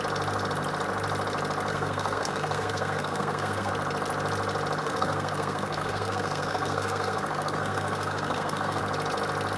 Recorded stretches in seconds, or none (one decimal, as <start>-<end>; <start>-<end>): 0.0-1.7; 3.7-4.8; 8.8-9.6

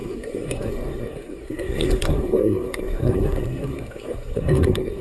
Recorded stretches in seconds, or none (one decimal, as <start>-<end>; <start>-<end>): none

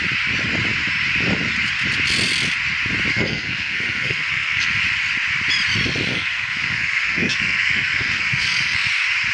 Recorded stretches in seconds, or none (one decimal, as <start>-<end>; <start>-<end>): 0.0-3.1; 4.8-6.1; 8.9-9.3

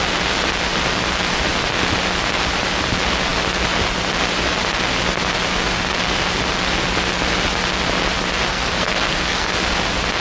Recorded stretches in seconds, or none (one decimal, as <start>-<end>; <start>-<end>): 0.0-8.5; 9.5-10.2

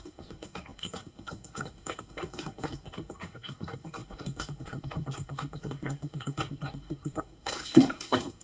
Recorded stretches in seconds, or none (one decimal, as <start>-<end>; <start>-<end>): none

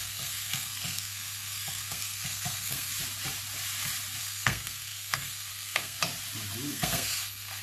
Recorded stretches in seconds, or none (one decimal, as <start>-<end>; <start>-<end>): 2.9-4.2; 6.0-6.7